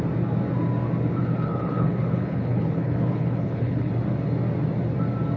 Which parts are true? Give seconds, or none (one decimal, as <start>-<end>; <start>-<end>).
0.0-1.2; 3.9-5.4